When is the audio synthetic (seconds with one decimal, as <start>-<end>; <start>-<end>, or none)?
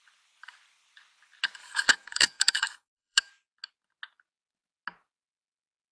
1.6-3.3